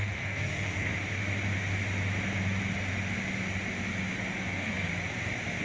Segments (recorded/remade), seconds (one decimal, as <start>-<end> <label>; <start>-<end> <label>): 0.0-0.9 remade; 0.9-4.3 recorded; 4.3-4.9 remade; 4.9-5.6 recorded